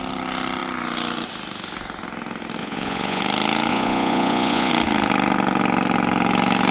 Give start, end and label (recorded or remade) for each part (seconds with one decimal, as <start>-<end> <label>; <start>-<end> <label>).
0.0-2.6 recorded; 2.6-3.2 remade; 3.2-3.7 recorded; 3.7-4.7 remade; 4.7-6.7 recorded